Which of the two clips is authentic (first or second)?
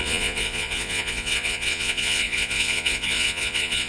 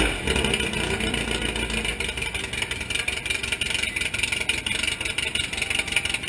second